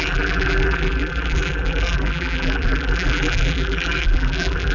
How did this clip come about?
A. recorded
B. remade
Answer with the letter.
B